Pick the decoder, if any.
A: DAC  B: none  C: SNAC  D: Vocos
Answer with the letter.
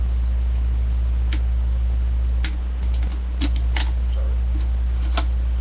B